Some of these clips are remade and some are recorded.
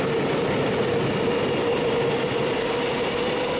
recorded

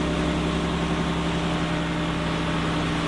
recorded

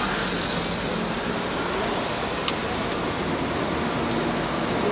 recorded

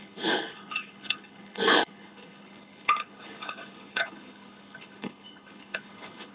remade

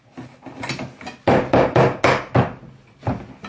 recorded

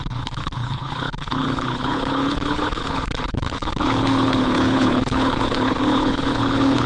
remade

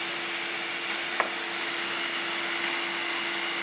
recorded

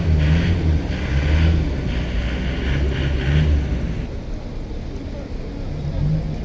recorded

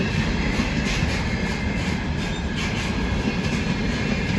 recorded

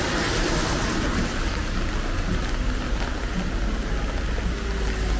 recorded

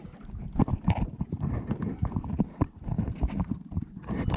recorded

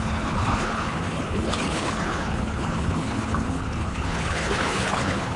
remade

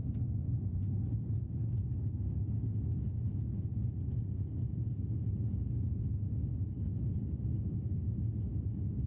recorded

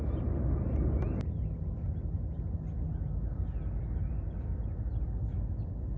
recorded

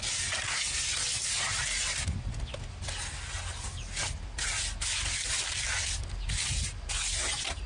recorded